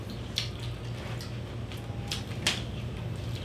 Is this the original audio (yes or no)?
yes